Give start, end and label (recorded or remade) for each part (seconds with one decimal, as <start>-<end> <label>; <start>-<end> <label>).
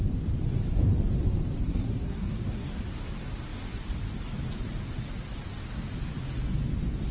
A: 0.0-1.6 recorded; 1.6-2.8 remade; 2.8-7.1 recorded